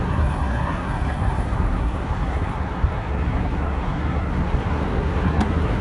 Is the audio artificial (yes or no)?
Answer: yes